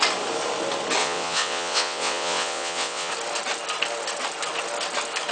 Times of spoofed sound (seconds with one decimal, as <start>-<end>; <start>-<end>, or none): 1.0-3.1